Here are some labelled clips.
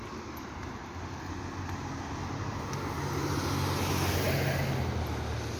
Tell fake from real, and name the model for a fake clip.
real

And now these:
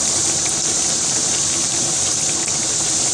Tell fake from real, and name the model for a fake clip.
real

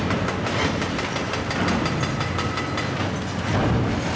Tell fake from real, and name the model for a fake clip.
real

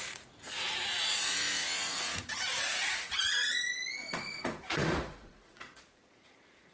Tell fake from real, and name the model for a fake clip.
fake, vocoder, Vocos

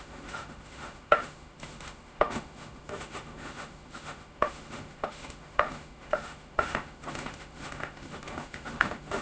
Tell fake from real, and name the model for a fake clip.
fake, autoencoder, DAC-VAE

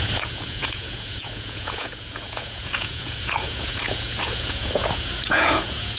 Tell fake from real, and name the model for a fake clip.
fake, vocoder, Vocos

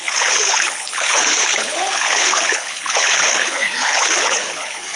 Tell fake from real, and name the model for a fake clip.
fake, codec, HILCodec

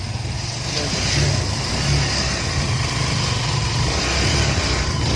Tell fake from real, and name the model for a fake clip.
real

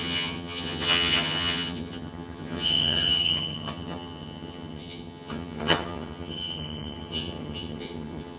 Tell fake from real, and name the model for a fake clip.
fake, vocoder, HiFi-GAN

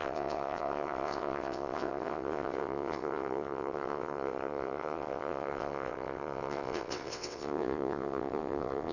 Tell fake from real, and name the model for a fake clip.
fake, vocoder, WaveNeXt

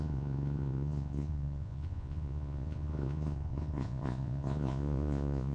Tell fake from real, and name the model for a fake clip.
fake, vocoder, Vocos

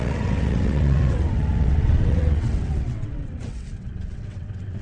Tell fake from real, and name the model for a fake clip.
fake, vocoder, WaveNeXt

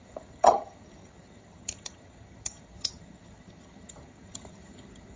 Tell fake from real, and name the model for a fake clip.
fake, vocoder, HiFi-GAN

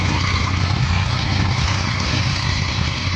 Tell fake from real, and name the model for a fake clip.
fake, codec, SNAC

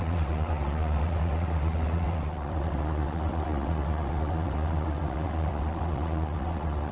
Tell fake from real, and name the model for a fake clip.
fake, vocoder, WaveNeXt